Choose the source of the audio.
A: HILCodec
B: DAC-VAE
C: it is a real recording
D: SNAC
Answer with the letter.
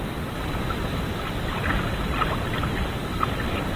C